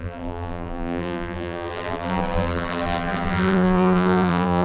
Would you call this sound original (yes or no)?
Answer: no